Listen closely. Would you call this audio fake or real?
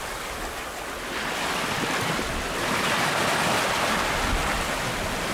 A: real